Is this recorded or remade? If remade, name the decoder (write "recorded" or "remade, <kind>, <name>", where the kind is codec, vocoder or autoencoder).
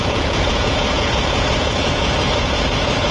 remade, vocoder, Vocos